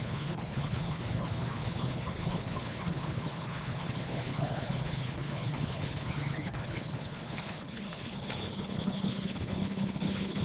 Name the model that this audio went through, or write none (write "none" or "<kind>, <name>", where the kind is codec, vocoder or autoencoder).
codec, HILCodec